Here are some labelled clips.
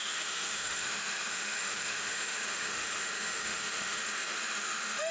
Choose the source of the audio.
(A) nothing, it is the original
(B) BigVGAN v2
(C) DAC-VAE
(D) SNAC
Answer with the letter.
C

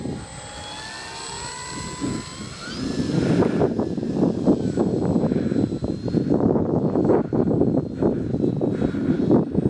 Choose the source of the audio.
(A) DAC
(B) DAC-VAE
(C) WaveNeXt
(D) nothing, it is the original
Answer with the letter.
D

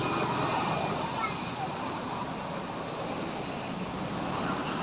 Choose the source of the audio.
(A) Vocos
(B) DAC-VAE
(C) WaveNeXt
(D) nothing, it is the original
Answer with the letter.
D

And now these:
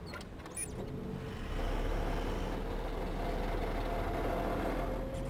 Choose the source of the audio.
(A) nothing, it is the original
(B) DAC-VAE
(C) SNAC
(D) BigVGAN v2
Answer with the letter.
A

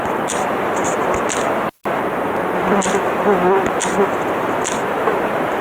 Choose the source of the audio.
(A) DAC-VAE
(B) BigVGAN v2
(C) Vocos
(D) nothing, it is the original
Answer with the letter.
D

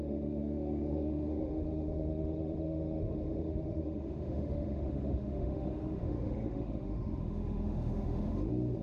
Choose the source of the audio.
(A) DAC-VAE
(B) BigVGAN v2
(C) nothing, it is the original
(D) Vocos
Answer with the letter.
A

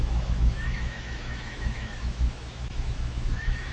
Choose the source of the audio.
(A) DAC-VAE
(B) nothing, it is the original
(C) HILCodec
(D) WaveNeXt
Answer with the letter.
A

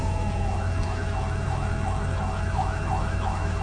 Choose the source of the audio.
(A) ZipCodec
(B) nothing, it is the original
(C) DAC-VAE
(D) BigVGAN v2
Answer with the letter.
C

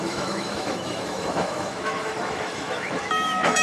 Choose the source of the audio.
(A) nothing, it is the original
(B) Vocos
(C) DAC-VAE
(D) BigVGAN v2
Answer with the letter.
C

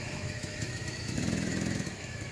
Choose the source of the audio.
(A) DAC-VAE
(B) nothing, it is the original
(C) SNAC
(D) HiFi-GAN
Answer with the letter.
A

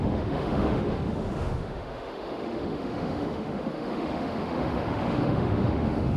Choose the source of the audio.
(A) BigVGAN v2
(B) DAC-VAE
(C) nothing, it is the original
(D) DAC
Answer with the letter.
B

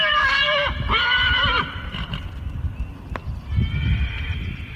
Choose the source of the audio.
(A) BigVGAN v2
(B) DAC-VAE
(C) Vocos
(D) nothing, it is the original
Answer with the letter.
D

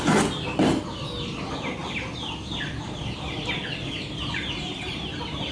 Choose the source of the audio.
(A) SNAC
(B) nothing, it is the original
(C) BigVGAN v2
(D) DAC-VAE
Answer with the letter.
B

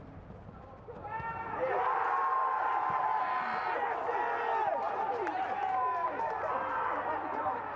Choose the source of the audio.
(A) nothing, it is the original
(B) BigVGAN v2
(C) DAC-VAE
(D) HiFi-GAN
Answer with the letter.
A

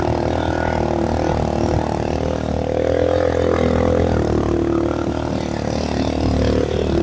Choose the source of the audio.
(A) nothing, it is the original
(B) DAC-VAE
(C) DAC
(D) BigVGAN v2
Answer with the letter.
A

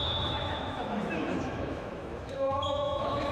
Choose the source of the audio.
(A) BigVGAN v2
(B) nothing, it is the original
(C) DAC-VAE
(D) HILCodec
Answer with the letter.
C